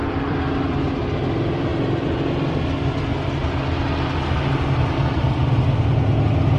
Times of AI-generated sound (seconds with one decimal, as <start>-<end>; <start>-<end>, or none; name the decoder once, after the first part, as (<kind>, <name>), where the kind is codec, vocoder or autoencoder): 0.0-0.7 (vocoder, BigVGAN v2)